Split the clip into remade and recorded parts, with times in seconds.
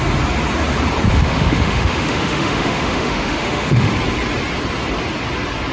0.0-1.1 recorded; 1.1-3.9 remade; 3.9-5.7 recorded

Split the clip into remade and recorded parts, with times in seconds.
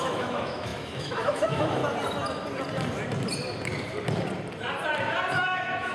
0.0-1.8 remade; 1.8-5.3 recorded; 5.3-5.9 remade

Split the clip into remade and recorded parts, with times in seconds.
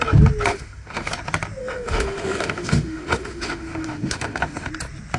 0.0-0.5 recorded; 0.5-1.1 remade; 1.1-1.6 recorded; 1.6-4.7 remade; 4.7-5.2 recorded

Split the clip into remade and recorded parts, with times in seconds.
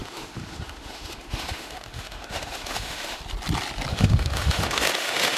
0.0-3.2 remade; 3.2-3.9 recorded; 3.9-5.4 remade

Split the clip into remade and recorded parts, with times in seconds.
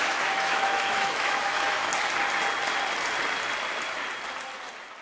0.0-1.9 remade; 1.9-5.0 recorded